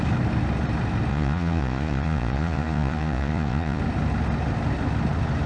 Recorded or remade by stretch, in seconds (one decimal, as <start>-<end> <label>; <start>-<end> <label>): 0.0-1.1 recorded; 1.1-3.8 remade; 3.8-5.5 recorded

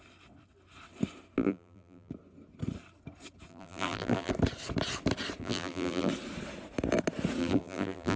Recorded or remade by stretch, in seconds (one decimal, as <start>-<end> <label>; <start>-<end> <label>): 0.0-1.4 recorded; 1.4-2.1 remade; 2.1-3.5 recorded; 3.5-4.3 remade; 4.3-5.4 recorded; 5.4-6.1 remade; 6.1-7.4 recorded; 7.4-8.2 remade

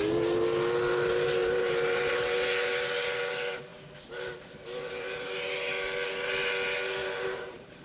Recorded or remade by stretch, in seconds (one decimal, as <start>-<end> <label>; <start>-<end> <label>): 0.0-1.4 recorded; 1.4-2.1 remade; 2.1-7.0 recorded; 7.0-7.8 remade

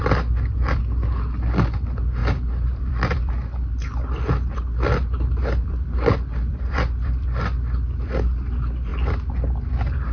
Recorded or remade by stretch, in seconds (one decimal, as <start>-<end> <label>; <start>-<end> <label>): 0.0-0.8 remade; 0.8-2.2 recorded; 2.2-3.3 remade; 3.3-5.4 recorded; 5.4-7.4 remade; 7.4-10.1 recorded

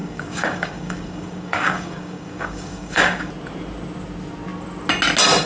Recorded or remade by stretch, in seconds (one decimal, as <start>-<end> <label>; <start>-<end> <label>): 0.0-3.3 remade; 3.3-5.5 recorded

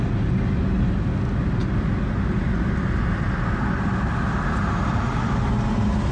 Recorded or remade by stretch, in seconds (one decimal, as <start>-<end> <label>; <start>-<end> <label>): 0.0-6.1 recorded

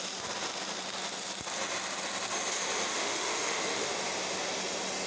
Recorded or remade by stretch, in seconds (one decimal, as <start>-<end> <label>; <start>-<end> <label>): 0.0-2.9 recorded; 2.9-3.9 remade; 3.9-5.1 recorded

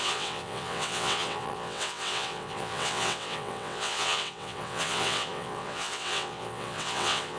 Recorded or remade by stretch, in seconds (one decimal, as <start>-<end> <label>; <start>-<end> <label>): 0.0-7.4 remade